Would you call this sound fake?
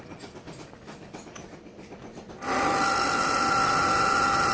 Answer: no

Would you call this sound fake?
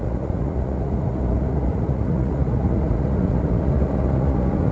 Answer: yes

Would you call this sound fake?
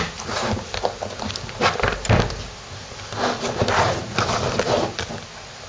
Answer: no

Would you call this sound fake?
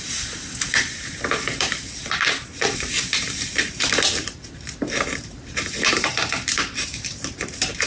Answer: yes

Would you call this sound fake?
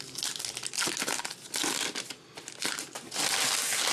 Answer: no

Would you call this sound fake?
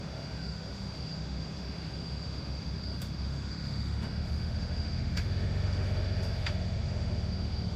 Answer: yes